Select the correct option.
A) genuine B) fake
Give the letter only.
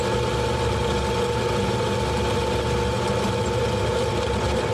A